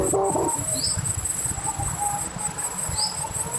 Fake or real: real